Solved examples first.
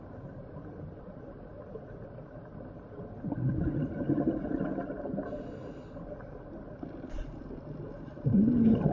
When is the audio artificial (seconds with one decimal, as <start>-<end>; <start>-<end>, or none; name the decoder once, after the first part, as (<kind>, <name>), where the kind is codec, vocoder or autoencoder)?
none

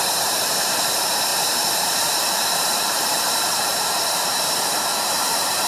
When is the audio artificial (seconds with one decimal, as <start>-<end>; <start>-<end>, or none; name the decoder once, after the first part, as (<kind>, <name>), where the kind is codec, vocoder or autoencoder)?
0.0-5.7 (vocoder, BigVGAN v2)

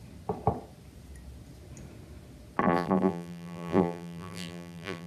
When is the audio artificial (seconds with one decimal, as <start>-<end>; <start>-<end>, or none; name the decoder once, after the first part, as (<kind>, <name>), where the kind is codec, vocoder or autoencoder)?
2.6-5.1 (vocoder, BigVGAN v2)

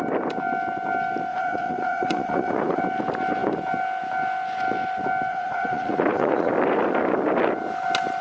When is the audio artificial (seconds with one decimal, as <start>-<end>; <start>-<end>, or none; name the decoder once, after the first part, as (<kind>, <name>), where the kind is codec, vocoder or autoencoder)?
1.3-2.8 (vocoder, Vocos); 5.3-6.5

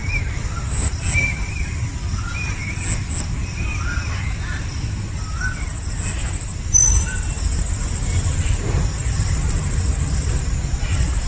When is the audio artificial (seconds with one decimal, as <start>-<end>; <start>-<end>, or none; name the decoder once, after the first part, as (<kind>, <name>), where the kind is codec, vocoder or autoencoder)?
0.0-0.9 (vocoder, BigVGAN v2)

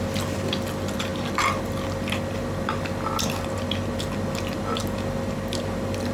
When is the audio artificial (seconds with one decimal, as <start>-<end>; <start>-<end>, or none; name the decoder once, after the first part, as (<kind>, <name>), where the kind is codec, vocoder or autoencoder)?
none

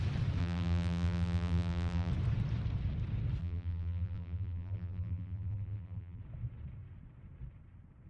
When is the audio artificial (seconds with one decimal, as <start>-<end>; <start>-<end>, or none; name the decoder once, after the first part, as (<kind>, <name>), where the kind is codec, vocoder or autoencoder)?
0.4-2.1 (vocoder, BigVGAN v2); 3.4-6.2

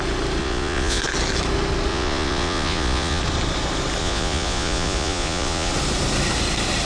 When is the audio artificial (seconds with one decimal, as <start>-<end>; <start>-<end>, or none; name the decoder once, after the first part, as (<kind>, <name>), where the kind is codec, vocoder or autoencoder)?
0.4-1.0 (vocoder, Vocos); 1.9-3.2; 4.0-5.7